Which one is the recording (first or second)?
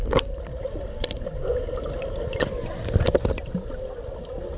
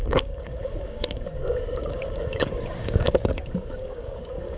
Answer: first